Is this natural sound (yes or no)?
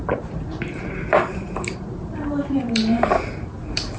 no